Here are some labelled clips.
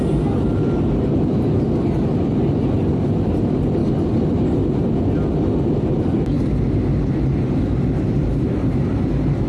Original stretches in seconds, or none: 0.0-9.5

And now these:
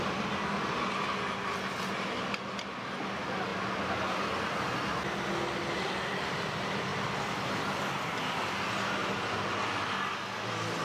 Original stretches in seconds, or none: 0.0-10.8